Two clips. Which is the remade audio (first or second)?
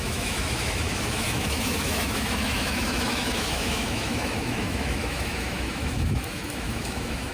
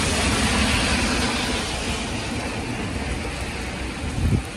first